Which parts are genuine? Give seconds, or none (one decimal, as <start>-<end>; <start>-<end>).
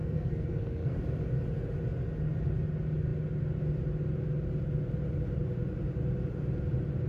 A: 1.0-7.1